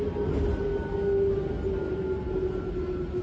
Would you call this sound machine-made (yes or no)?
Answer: no